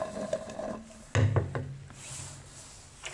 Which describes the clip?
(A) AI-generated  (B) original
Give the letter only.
B